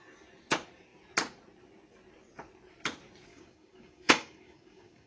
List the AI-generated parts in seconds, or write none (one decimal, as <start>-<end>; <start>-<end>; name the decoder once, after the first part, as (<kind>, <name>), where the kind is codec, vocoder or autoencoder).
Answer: 3.3-5.1 (codec, DAC)